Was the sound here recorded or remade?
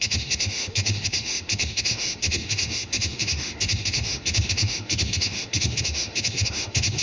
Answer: remade